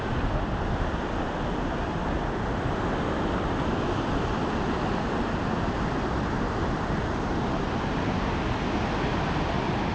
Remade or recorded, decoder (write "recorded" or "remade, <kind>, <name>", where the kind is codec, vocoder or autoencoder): recorded